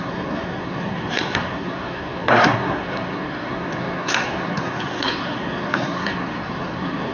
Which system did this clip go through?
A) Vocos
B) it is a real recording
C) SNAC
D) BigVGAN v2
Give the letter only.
C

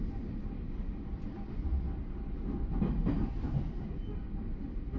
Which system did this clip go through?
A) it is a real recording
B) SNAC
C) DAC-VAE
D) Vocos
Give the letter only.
A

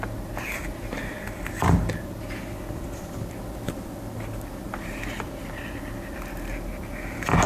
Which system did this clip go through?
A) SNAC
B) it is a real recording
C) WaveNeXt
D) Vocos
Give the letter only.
B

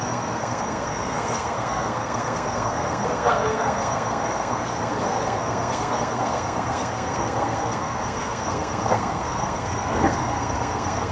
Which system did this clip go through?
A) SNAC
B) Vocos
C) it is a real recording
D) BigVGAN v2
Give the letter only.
A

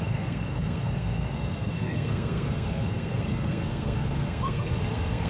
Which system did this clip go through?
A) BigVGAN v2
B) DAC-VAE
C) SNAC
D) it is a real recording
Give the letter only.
C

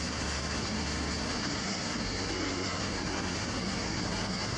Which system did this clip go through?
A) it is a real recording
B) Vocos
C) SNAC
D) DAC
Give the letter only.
C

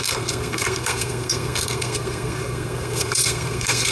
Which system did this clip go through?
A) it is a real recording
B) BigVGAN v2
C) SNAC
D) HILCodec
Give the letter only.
C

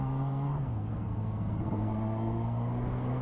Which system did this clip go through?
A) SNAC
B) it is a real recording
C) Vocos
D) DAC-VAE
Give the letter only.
A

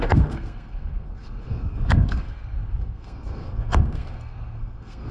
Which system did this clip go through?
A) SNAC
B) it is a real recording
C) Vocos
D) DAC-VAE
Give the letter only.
A